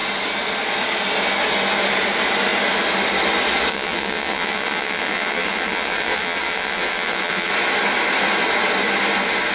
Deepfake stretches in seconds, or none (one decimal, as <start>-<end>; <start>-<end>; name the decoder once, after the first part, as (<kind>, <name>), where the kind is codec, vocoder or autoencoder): 3.7-7.5 (vocoder, WaveNeXt)